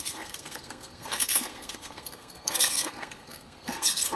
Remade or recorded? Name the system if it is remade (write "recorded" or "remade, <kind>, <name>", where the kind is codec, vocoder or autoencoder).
remade, codec, SNAC